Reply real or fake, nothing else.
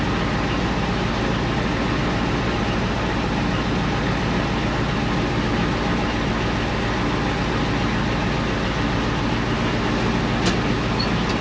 real